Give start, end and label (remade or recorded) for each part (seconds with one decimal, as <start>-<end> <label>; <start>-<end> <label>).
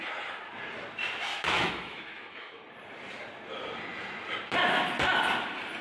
0.0-1.3 recorded; 1.3-2.6 remade; 2.6-5.8 recorded